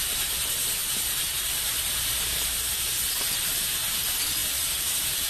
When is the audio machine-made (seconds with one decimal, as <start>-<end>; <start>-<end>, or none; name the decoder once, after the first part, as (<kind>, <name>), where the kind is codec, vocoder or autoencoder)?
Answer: 0.8-2.2 (vocoder, BigVGAN v2); 4.4-5.3